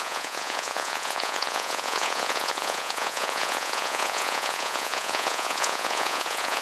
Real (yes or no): no